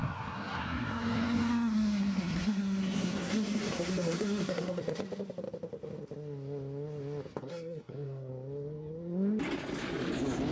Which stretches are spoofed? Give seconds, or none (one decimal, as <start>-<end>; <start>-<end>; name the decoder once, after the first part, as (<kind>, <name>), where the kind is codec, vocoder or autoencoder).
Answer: 0.0-4.8 (codec, SNAC); 7.4-8.3